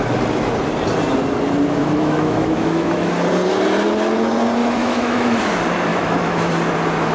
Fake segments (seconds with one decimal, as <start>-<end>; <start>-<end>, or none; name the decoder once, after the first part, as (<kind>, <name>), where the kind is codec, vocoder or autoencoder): 1.8-3.1 (autoencoder, DAC-VAE); 4.6-5.5; 5.9-6.5